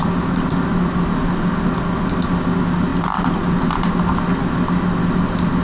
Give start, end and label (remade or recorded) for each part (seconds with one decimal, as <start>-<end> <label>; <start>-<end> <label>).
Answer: 0.0-5.6 recorded